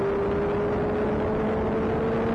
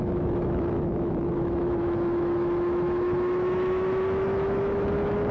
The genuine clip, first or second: first